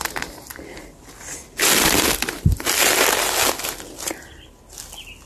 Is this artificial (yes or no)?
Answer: no